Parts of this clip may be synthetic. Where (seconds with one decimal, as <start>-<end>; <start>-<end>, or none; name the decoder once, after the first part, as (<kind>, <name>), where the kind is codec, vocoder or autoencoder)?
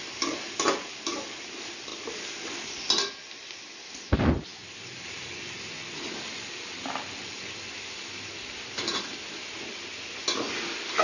none